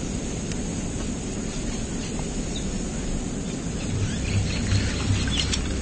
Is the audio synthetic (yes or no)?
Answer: no